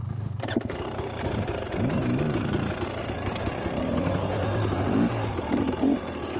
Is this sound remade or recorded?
remade